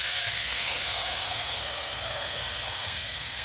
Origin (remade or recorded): remade